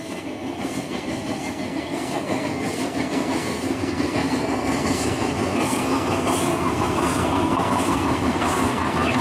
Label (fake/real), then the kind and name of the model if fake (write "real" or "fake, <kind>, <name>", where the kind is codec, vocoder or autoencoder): fake, codec, SNAC